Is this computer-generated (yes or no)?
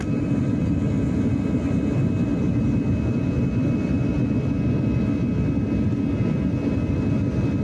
no